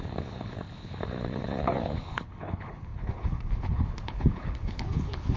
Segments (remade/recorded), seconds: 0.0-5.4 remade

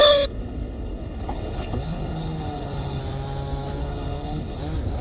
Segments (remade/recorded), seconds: 0.0-3.0 remade; 3.0-3.8 recorded; 3.8-4.6 remade; 4.6-5.0 recorded